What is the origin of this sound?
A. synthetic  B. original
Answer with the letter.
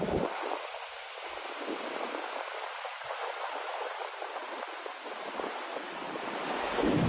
B